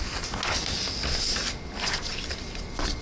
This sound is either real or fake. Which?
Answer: real